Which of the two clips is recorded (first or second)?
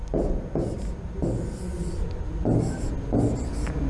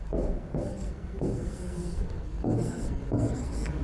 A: first